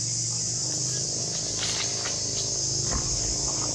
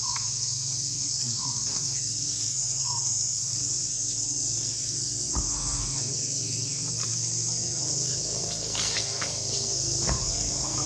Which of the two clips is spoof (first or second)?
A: second